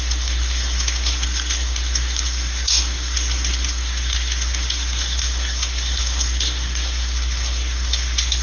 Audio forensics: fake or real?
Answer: fake